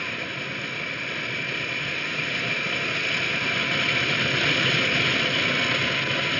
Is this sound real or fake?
real